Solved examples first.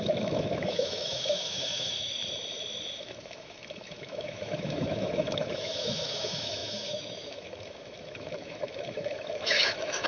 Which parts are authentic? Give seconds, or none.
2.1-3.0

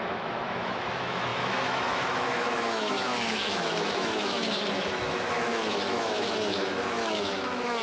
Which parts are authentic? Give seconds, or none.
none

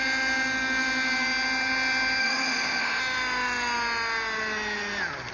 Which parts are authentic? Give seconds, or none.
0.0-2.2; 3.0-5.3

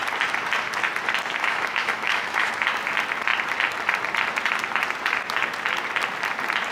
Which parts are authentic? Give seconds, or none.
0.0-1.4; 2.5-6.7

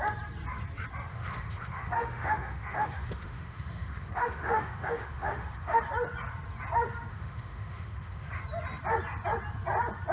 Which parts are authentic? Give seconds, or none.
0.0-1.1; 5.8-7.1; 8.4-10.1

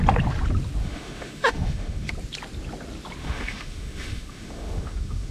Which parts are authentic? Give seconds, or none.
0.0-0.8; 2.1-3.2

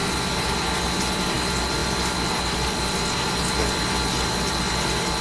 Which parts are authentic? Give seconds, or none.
0.0-5.2

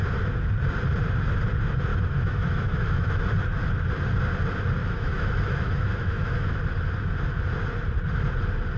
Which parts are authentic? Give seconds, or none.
0.0-1.9; 3.2-4.8; 6.6-8.8